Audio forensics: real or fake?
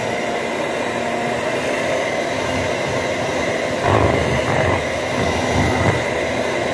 real